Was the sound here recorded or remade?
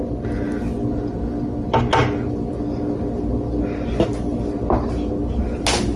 recorded